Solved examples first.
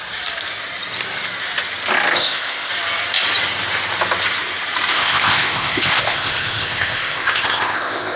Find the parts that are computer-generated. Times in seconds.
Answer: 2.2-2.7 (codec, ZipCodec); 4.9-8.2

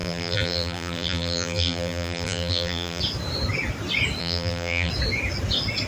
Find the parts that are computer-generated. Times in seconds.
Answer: 0.0-3.0 (vocoder, BigVGAN v2); 4.2-4.9

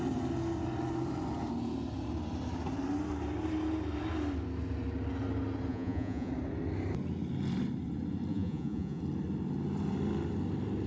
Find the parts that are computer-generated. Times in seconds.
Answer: 5.7-6.3 (vocoder, Vocos); 8.3-9.0

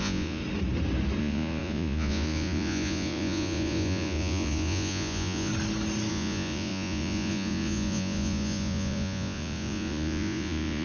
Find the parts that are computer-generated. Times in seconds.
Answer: 0.0-0.4 (vocoder, Vocos); 1.2-5.5; 6.1-10.8

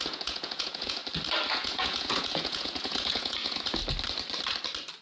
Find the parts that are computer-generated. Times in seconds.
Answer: 0.0-1.0 (vocoder, Vocos); 1.5-3.8

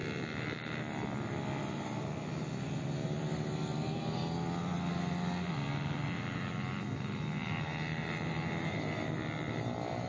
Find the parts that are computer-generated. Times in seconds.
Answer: none

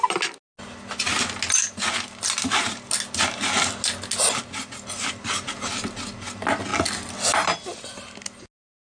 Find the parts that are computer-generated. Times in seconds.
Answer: none